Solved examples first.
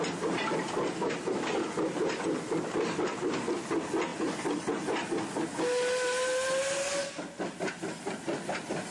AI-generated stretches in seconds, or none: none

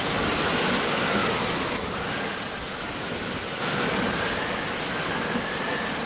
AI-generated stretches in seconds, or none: none

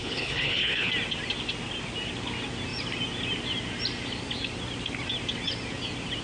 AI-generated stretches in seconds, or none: 0.0-0.9 (codec, HILCodec)

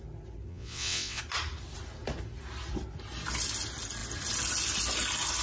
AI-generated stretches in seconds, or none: 0.5-1.2 (vocoder, WaveNeXt)

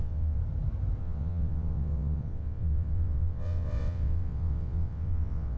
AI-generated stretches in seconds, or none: 0.0-0.4 (vocoder, WaveNeXt); 1.0-5.6

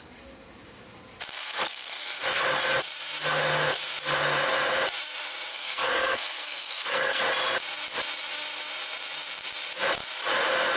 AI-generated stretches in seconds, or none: 1.3-2.4 (codec, SNAC); 5.5-7.2

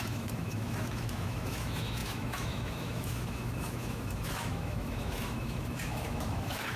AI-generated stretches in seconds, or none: 0.0-6.8 (autoencoder, DAC-VAE)